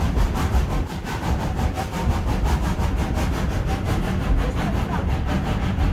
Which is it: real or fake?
fake